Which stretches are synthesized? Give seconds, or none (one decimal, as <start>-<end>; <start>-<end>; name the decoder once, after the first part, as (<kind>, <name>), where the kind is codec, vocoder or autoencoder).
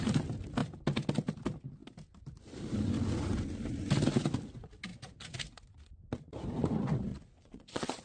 7.1-8.0 (vocoder, Vocos)